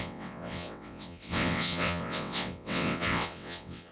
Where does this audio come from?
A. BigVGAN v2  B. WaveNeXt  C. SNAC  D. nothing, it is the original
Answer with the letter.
B